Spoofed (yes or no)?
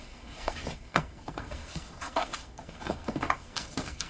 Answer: yes